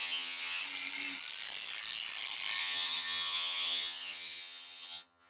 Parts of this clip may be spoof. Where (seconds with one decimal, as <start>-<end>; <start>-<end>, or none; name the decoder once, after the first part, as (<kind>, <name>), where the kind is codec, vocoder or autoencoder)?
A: 0.0-0.6 (vocoder, HiFi-GAN); 2.6-5.3